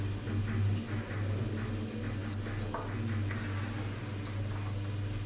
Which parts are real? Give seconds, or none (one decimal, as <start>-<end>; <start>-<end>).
0.0-5.3